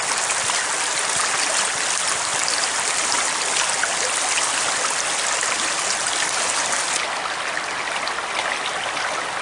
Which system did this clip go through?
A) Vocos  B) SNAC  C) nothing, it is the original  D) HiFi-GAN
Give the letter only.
C